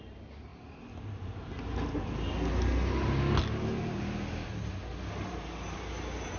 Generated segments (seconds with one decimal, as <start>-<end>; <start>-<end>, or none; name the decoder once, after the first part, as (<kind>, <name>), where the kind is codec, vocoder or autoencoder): none